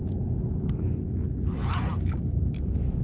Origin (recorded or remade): recorded